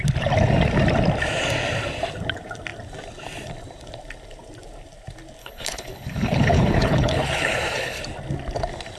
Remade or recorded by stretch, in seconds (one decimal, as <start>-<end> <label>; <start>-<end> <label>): 0.0-5.4 recorded; 5.4-8.0 remade; 8.0-9.0 recorded